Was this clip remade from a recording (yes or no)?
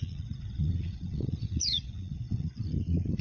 yes